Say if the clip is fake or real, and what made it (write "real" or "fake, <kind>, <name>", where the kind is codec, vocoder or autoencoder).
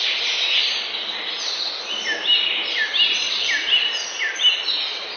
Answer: real